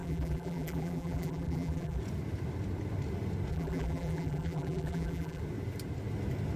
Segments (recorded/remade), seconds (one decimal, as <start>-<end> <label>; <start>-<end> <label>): 0.0-2.0 remade; 2.0-3.5 recorded; 3.5-5.4 remade; 5.4-6.6 recorded